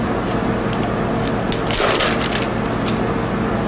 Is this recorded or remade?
recorded